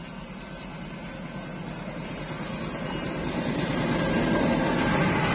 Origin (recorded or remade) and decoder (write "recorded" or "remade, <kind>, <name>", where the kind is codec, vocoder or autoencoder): recorded